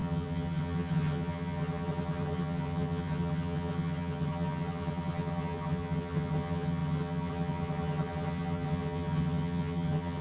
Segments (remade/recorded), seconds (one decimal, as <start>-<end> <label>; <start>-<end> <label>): 0.0-10.2 remade